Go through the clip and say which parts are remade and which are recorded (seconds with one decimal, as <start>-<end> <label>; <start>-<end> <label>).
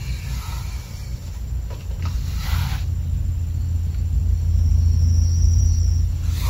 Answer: 0.0-6.5 recorded